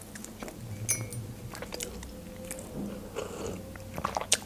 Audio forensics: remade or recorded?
recorded